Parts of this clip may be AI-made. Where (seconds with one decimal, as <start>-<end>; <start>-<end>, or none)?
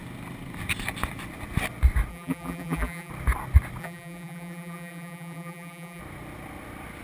2.1-3.1; 3.8-6.0